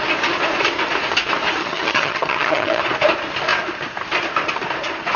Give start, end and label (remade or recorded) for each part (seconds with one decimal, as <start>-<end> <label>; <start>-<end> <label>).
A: 0.0-1.6 recorded; 1.6-2.8 remade; 2.8-5.2 recorded